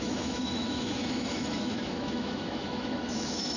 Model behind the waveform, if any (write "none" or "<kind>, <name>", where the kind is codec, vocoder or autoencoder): autoencoder, DAC-VAE